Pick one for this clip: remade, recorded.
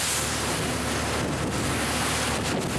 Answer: recorded